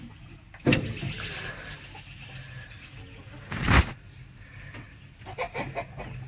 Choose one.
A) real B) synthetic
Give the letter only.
A